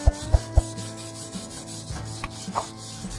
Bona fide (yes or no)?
yes